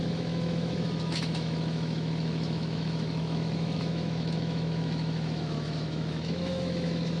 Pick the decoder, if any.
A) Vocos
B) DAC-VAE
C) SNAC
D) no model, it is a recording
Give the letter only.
B